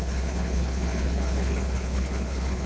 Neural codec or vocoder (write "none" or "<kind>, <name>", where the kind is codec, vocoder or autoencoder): codec, HILCodec